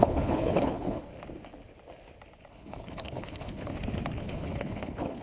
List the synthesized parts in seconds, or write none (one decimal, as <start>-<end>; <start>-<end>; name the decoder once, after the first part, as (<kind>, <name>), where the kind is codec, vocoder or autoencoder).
0.0-1.1 (codec, HILCodec); 2.5-3.7; 4.2-5.2